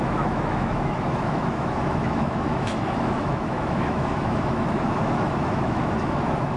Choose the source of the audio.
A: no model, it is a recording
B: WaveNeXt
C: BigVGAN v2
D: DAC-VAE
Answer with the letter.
D